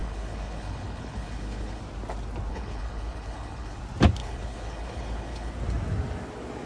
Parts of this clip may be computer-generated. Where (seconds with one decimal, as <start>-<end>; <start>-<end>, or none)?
0.0-1.8; 2.5-3.8; 4.2-5.5